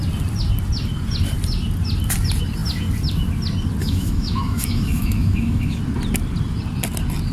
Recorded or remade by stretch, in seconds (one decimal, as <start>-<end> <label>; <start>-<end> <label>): 0.0-3.8 recorded; 3.8-5.8 remade; 5.8-7.3 recorded